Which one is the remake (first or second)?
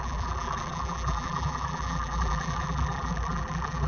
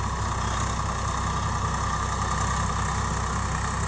first